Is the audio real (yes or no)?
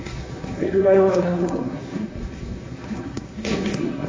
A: no